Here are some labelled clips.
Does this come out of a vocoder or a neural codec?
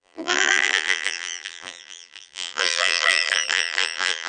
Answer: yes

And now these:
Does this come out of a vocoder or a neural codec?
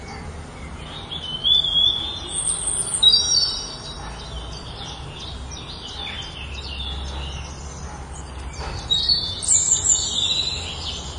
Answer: no